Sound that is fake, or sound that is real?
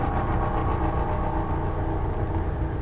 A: real